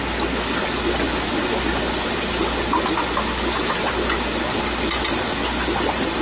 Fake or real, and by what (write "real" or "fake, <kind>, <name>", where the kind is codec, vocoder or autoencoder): real